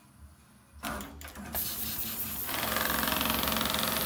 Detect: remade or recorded recorded